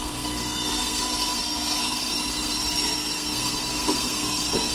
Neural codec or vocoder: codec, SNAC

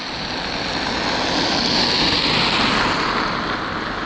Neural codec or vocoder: none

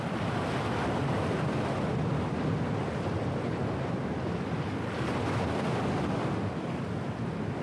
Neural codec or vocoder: none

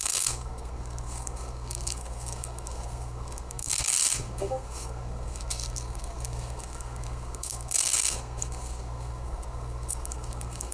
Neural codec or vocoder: codec, SNAC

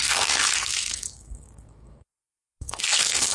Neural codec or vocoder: codec, SNAC